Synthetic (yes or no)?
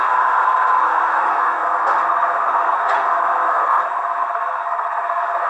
yes